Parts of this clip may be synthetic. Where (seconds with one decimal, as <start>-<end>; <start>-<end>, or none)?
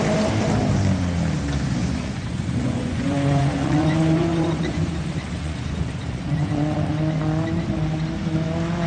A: 1.8-6.5